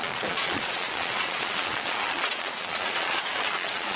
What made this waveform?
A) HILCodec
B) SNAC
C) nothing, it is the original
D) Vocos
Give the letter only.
D